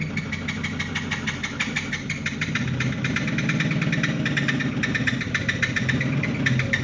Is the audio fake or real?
real